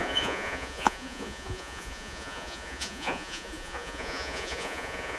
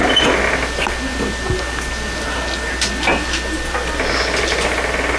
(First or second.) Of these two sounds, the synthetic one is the first